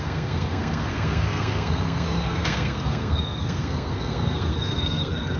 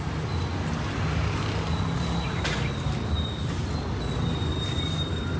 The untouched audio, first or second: second